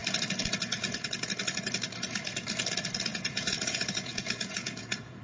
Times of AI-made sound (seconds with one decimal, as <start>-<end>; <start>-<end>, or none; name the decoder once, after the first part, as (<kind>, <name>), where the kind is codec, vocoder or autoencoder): 3.1-5.2 (vocoder, Vocos)